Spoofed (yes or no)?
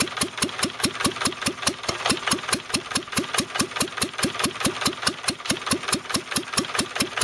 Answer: no